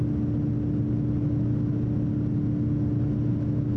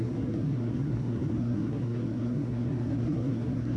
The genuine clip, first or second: first